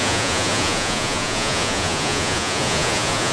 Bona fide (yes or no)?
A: no